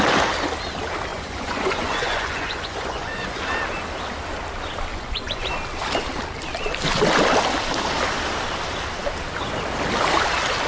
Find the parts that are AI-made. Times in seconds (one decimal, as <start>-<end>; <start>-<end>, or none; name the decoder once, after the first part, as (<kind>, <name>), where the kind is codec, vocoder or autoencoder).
1.1-3.4 (vocoder, Vocos); 4.9-5.5

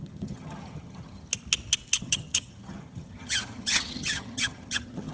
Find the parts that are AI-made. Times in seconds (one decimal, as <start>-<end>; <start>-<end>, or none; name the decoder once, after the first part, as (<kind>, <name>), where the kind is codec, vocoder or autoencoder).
0.0-1.3 (vocoder, HiFi-GAN); 2.0-5.1

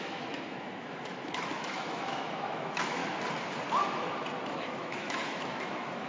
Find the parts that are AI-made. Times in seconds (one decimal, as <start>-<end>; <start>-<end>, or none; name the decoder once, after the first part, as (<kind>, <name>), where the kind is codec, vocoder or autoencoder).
0.0-3.0 (autoencoder, DAC-VAE); 4.5-6.1

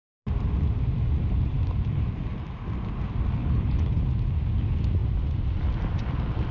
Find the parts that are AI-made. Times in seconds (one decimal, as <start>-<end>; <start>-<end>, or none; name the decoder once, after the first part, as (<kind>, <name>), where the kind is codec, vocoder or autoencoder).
3.4-4.0 (codec, HILCodec)